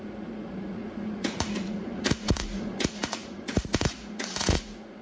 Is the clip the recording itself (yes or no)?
no